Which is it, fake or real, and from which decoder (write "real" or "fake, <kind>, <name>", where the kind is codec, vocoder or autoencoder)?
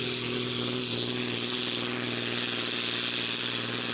real